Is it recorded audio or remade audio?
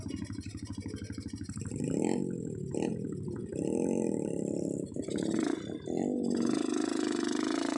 recorded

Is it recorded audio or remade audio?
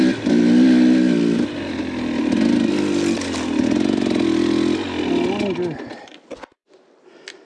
recorded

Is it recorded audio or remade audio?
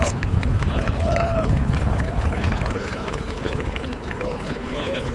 remade